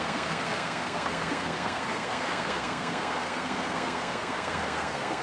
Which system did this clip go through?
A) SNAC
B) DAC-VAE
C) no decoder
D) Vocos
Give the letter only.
A